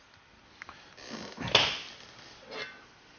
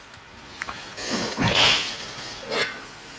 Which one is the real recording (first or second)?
first